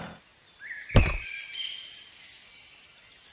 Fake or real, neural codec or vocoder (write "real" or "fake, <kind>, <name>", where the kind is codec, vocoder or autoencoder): real